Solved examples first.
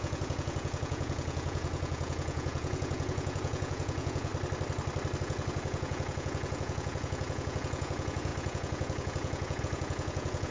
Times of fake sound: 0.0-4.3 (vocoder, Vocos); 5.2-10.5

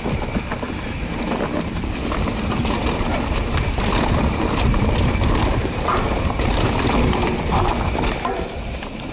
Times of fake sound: 0.0-9.1 (vocoder, BigVGAN v2)

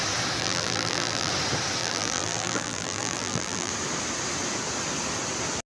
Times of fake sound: 0.4-1.3 (vocoder, BigVGAN v2); 1.8-3.7